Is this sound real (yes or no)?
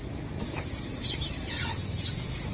yes